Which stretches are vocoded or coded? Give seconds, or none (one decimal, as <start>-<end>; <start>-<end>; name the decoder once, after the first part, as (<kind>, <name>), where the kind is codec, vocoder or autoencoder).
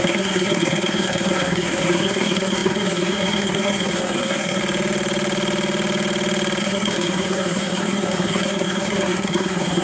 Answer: 0.0-4.6 (codec, SNAC); 6.6-9.8